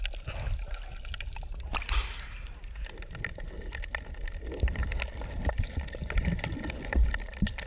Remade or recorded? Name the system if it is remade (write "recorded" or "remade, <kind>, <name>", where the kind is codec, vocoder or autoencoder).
recorded